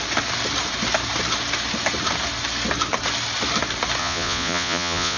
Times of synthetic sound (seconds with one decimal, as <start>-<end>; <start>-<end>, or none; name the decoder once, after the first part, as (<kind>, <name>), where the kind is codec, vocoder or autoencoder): 4.0-5.2 (vocoder, Vocos)